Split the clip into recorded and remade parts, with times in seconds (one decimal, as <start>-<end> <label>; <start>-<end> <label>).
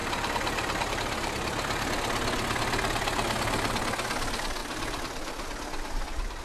0.0-1.0 remade; 1.0-6.4 recorded